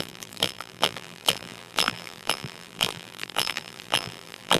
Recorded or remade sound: remade